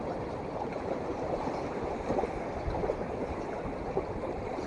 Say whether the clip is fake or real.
real